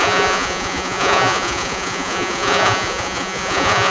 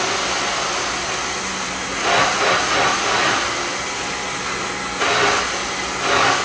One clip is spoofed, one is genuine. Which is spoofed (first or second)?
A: first